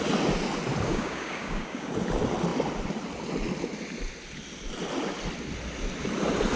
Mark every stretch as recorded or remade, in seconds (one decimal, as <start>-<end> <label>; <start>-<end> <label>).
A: 0.0-0.9 recorded; 0.9-1.9 remade; 1.9-6.6 recorded